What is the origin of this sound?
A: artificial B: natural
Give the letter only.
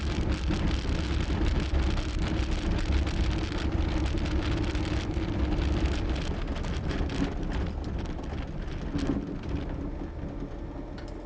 B